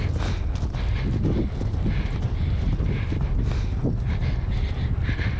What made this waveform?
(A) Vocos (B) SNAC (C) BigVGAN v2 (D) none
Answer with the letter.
D